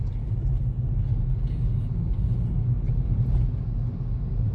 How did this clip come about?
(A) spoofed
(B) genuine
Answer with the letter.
B